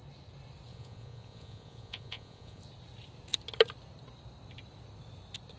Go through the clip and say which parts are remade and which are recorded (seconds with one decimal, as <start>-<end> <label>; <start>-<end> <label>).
0.0-0.7 recorded; 0.7-2.6 remade; 2.6-5.6 recorded